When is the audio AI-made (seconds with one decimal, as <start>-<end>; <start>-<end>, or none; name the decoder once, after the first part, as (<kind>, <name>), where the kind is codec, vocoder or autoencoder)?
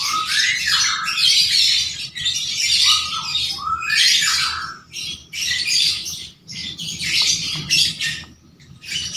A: 1.2-3.5 (vocoder, BigVGAN v2); 5.2-5.9